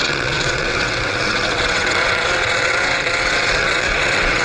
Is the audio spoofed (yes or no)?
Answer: yes